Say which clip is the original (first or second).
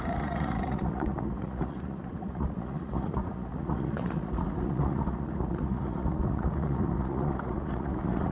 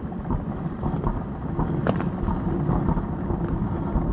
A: second